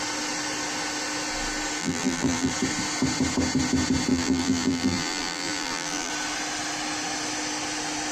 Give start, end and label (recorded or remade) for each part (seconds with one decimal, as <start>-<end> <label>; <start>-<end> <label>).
0.0-1.8 recorded; 1.8-2.5 remade; 2.5-4.1 recorded; 4.1-6.1 remade; 6.1-8.1 recorded